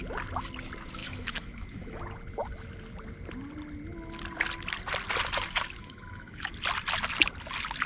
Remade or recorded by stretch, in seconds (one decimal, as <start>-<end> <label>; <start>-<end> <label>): 0.0-1.0 recorded; 1.0-2.0 remade; 2.0-5.8 recorded; 5.8-6.5 remade; 6.5-7.9 recorded